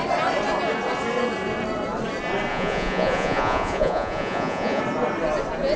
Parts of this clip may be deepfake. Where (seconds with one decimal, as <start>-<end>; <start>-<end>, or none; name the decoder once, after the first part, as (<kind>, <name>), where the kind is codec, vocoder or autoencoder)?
2.5-4.8 (vocoder, Vocos)